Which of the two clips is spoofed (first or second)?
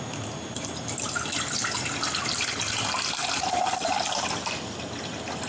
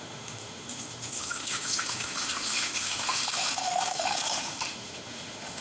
second